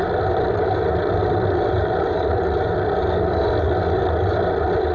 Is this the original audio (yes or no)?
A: no